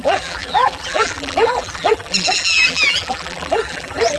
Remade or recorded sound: remade